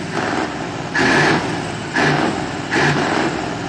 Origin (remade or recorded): recorded